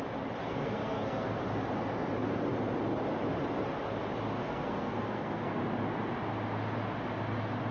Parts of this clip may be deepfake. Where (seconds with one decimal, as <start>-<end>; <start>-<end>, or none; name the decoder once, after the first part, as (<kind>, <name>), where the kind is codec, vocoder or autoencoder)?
0.4-1.4 (codec, SNAC); 4.4-5.6